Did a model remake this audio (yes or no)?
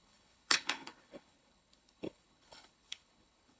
yes